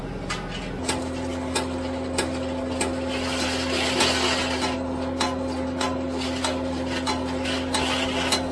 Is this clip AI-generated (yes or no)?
no